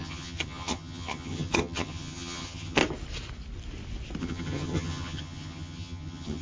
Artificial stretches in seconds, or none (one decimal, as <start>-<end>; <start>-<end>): 0.0-2.8; 4.2-6.4